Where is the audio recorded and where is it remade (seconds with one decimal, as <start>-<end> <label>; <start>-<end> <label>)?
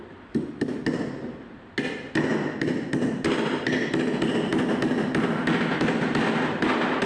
0.0-7.1 recorded